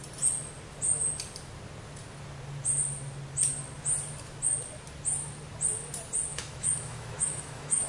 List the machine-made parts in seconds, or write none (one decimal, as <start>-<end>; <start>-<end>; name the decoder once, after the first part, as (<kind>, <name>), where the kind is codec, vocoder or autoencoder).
6.3-7.9 (autoencoder, DAC-VAE)